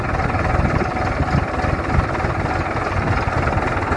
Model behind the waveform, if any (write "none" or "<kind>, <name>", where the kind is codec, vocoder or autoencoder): none